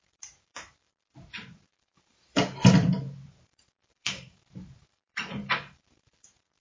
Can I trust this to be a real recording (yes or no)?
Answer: no